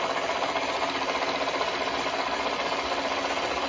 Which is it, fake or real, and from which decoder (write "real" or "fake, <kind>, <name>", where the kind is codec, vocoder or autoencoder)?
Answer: real